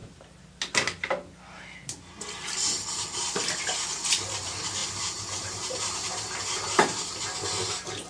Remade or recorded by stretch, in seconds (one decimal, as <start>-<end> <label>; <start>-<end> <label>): 0.0-4.8 recorded; 4.8-7.2 remade; 7.2-8.1 recorded